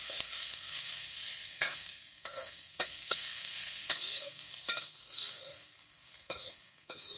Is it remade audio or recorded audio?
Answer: remade